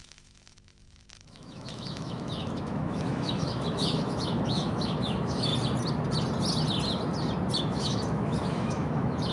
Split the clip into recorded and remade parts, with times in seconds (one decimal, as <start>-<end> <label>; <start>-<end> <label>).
0.0-5.5 remade; 5.5-7.6 recorded; 7.6-9.3 remade